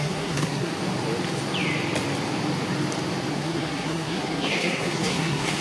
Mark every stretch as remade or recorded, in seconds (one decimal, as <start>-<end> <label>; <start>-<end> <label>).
0.0-0.7 remade; 0.7-3.3 recorded; 3.3-5.6 remade